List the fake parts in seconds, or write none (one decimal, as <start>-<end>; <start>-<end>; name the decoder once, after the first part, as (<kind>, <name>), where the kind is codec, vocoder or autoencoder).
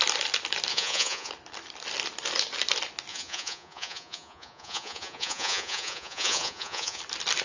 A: 0.7-1.3 (vocoder, Vocos); 3.1-7.0